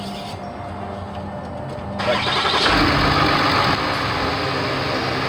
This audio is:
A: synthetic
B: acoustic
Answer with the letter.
B